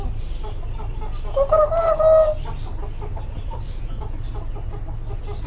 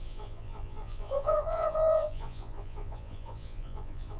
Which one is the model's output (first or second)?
second